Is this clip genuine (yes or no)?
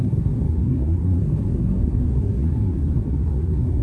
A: no